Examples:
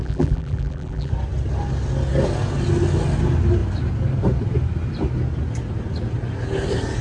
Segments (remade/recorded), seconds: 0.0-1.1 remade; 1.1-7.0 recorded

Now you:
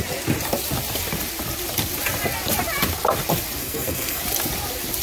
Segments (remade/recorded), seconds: 0.0-3.6 recorded; 3.6-4.2 remade; 4.2-5.0 recorded

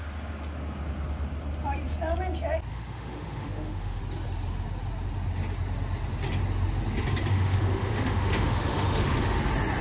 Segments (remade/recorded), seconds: 0.0-2.7 recorded; 2.7-4.0 remade; 4.0-7.3 recorded; 7.3-9.4 remade; 9.4-9.8 recorded